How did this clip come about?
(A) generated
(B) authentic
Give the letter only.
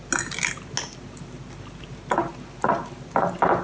B